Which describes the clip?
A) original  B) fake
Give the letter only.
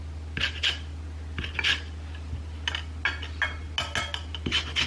A